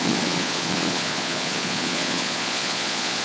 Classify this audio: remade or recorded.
remade